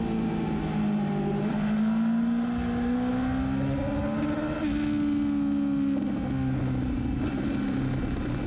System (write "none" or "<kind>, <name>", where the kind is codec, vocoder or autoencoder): none